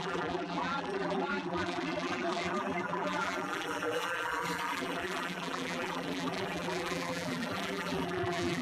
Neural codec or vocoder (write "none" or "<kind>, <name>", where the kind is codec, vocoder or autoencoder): vocoder, BigVGAN v2